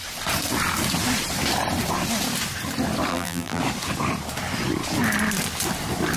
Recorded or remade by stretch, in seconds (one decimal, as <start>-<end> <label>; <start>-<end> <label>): 0.0-3.1 recorded; 3.1-3.6 remade; 3.6-6.2 recorded